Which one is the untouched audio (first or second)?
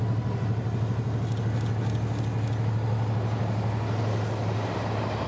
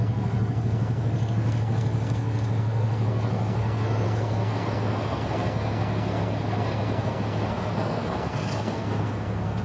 first